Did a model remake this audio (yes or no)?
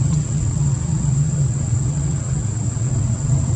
yes